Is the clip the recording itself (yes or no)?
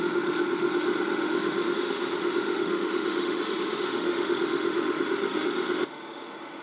no